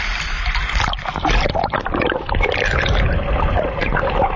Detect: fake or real real